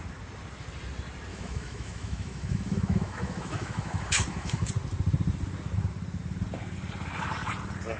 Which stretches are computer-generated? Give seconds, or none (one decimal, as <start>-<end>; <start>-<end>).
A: 1.3-4.7